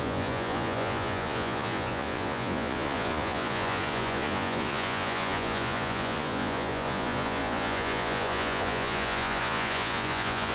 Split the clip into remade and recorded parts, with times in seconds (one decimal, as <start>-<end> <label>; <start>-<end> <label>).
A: 0.0-10.5 remade